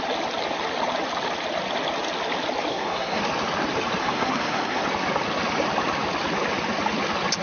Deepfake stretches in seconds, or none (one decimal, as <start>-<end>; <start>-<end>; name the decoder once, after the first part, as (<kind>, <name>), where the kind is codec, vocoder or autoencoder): 2.7-3.2 (codec, SNAC); 4.0-4.8